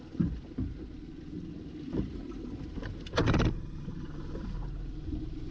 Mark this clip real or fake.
real